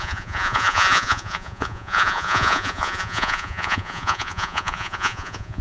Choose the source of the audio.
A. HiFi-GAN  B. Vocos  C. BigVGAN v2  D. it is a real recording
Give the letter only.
B